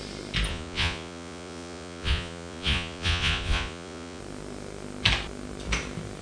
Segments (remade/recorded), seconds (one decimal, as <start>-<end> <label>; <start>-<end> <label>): 0.0-0.5 recorded; 0.5-4.2 remade; 4.2-6.2 recorded